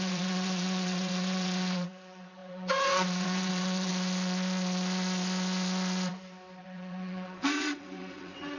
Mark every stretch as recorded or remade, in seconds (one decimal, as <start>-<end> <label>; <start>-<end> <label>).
0.0-3.9 remade; 3.9-6.6 recorded; 6.6-8.6 remade